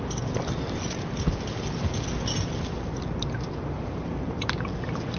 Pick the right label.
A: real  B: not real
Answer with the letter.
A